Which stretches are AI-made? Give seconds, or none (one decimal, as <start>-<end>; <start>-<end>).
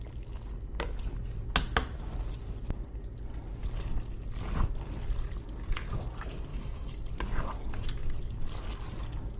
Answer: 6.5-7.0